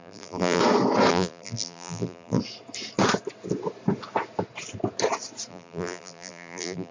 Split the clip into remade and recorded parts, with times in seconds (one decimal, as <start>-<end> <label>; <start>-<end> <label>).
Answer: 0.0-0.6 remade; 0.6-1.1 recorded; 1.1-2.4 remade; 2.4-5.5 recorded; 5.5-6.9 remade